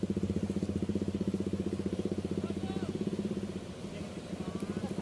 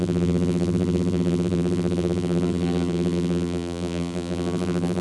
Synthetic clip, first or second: second